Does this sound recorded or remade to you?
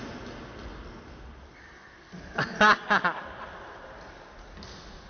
recorded